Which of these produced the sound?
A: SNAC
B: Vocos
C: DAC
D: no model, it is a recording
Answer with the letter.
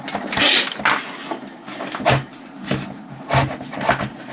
D